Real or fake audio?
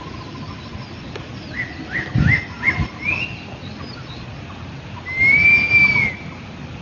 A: real